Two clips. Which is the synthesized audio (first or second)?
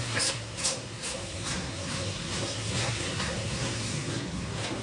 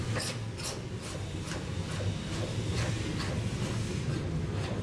first